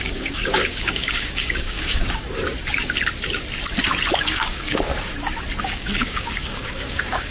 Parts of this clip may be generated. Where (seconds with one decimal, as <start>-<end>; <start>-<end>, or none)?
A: 0.0-2.2; 4.2-4.9; 5.6-7.3